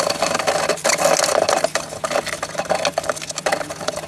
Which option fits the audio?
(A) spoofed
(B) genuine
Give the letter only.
B